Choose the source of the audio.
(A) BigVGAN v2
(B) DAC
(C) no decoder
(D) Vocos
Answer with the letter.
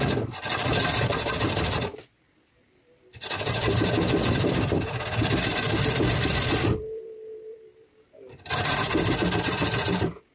A